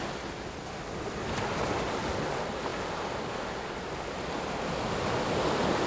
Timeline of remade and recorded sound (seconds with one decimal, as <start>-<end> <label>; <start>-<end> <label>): 0.0-5.9 recorded